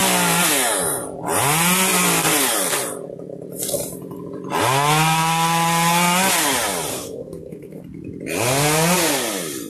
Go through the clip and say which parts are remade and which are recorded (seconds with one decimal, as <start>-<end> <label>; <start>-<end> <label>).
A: 0.0-6.9 recorded; 6.9-7.8 remade; 7.8-9.7 recorded